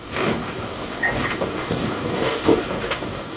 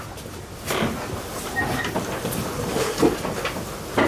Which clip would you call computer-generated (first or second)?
first